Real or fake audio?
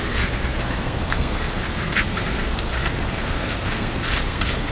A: fake